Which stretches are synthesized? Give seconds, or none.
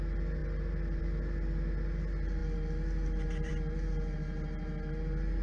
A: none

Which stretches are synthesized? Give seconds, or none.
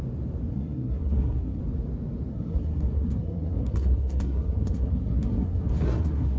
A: 0.5-1.6; 2.3-6.4